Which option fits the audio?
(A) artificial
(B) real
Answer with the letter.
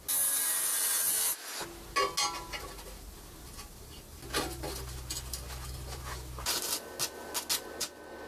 B